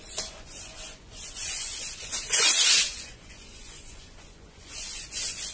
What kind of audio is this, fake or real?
fake